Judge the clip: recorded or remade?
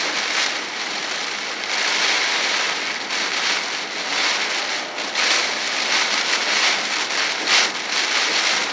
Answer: recorded